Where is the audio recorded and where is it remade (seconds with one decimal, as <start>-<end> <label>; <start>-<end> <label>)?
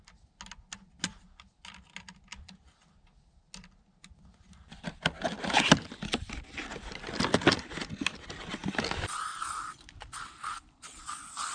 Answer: 0.0-11.5 recorded